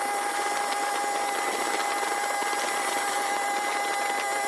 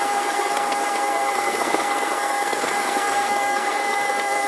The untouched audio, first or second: first